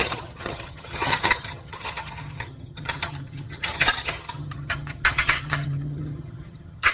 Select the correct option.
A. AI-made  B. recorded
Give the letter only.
A